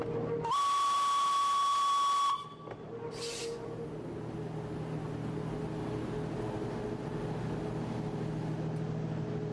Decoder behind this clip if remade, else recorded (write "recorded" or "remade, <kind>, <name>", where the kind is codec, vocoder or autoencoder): recorded